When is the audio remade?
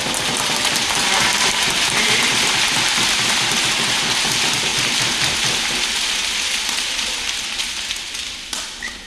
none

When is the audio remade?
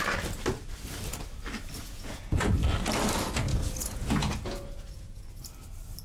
1.8-2.5 (vocoder, Vocos); 3.5-5.4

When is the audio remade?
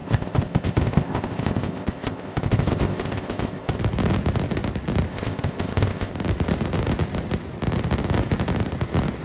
0.0-3.8 (codec, ZipCodec); 5.1-6.1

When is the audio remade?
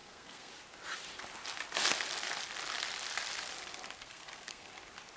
0.0-0.5 (codec, SNAC); 4.0-4.7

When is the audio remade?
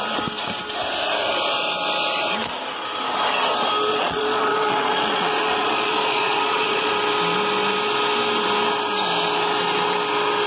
3.9-6.9 (vocoder, Vocos)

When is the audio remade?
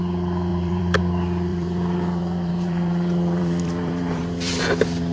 0.5-1.0 (vocoder, BigVGAN v2); 1.5-4.6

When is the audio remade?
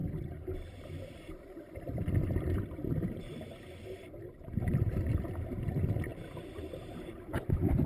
0.0-6.1 (vocoder, BigVGAN v2); 6.8-7.9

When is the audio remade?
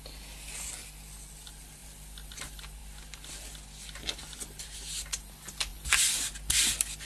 none